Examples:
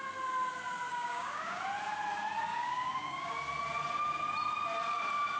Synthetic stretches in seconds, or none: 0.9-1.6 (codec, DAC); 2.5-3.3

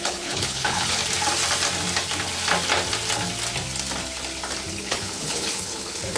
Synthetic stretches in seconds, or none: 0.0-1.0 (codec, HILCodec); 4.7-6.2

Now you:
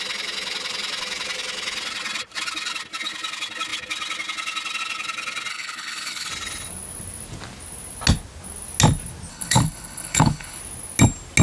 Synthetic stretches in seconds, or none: 5.5-6.3 (codec, HILCodec); 9.3-10.6